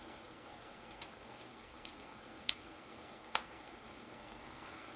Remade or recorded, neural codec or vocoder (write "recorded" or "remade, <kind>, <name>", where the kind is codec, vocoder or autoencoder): remade, codec, SNAC